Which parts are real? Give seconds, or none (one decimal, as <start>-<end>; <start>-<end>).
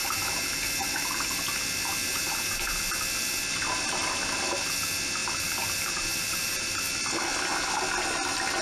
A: 1.4-2.1; 2.8-5.2; 6.8-8.6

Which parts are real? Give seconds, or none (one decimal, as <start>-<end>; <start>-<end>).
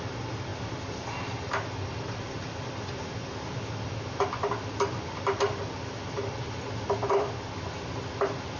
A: 0.0-8.6